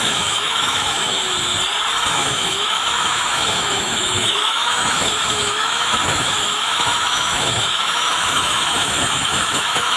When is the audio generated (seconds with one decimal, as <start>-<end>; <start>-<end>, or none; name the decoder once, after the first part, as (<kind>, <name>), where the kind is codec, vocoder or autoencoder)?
0.0-1.2 (autoencoder, DAC-VAE); 2.1-10.0